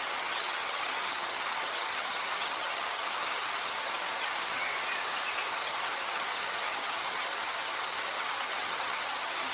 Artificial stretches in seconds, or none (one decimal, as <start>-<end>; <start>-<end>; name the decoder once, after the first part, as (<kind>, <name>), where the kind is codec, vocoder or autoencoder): 0.0-4.7 (vocoder, HiFi-GAN); 5.5-9.5